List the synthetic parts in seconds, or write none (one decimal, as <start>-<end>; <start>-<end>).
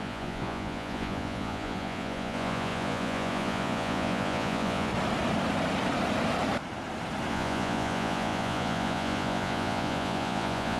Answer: 0.0-4.9; 7.3-10.8